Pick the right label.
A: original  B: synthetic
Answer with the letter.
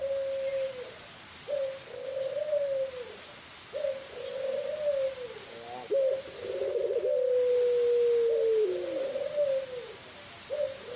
A